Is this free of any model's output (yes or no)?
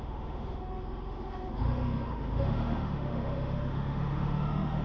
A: no